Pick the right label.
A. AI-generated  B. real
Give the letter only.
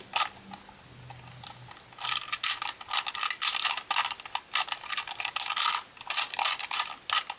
B